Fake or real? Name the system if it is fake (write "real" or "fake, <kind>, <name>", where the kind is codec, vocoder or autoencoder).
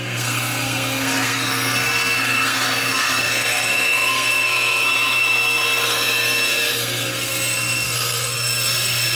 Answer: fake, codec, SNAC